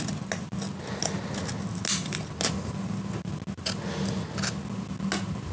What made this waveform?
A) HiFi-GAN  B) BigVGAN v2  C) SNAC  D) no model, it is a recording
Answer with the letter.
D